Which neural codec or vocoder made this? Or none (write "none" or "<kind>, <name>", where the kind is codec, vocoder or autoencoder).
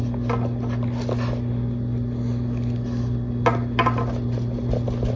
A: none